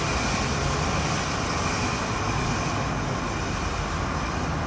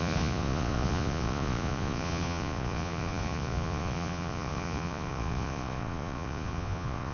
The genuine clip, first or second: first